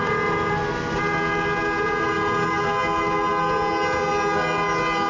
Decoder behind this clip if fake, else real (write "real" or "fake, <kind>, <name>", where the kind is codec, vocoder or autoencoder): real